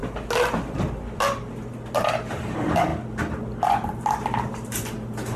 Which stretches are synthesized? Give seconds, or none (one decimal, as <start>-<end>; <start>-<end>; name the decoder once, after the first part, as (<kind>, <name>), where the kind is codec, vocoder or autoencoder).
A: 2.0-2.9 (vocoder, BigVGAN v2); 3.4-5.4